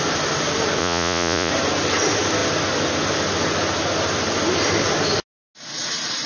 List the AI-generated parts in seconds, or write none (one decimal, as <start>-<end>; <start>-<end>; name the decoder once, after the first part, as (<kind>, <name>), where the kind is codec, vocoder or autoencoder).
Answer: 0.8-1.5 (vocoder, Vocos)